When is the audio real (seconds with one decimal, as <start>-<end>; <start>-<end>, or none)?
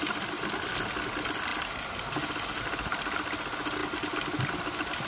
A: 0.0-5.1